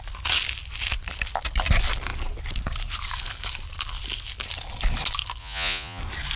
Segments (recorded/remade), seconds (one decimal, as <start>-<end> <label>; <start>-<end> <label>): 0.0-5.4 recorded; 5.4-6.0 remade; 6.0-6.4 recorded